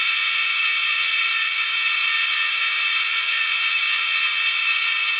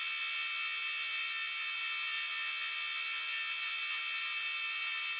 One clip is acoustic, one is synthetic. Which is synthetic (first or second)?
first